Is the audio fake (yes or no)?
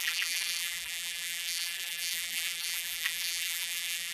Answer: yes